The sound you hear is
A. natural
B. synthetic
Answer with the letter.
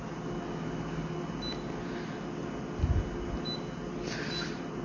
A